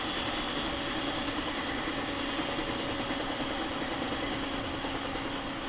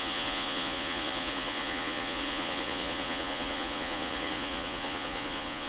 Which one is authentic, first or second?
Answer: first